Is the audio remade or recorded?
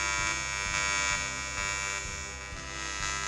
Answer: recorded